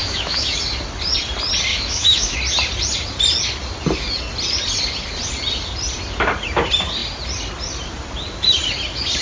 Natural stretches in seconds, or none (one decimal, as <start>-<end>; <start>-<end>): 0.6-1.7; 2.4-9.2